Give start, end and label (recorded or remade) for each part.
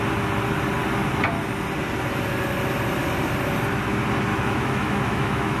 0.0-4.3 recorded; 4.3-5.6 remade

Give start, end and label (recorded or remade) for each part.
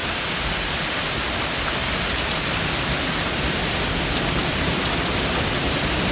0.0-1.0 recorded; 1.0-6.1 remade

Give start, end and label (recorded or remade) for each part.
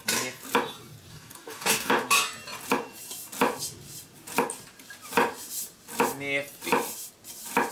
0.0-1.1 recorded; 1.1-1.9 remade; 1.9-7.7 recorded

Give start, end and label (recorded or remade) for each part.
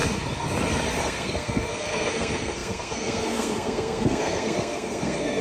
0.0-1.0 recorded; 1.0-5.4 remade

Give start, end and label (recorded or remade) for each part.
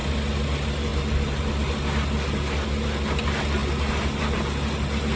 0.0-5.2 recorded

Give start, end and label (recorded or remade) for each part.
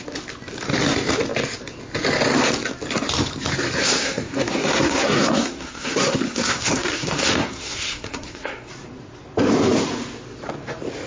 0.0-3.8 recorded; 3.8-8.7 remade; 8.7-11.1 recorded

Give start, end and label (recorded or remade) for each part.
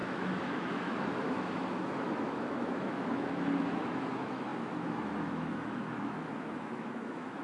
0.0-7.4 remade